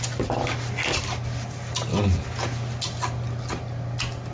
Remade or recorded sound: recorded